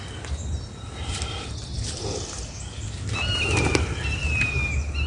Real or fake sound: real